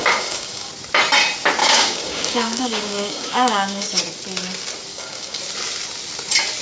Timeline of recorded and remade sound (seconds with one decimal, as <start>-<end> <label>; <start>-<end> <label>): 0.0-0.7 remade; 0.7-1.6 recorded; 1.6-4.0 remade; 4.0-4.9 recorded; 4.9-5.4 remade; 5.4-6.6 recorded